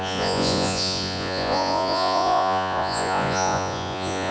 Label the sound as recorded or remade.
remade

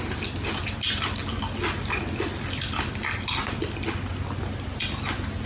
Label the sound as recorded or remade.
recorded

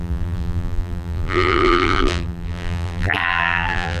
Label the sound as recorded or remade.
remade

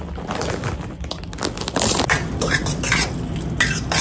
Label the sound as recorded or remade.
recorded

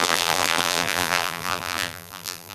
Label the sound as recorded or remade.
remade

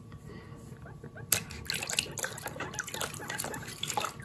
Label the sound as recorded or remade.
recorded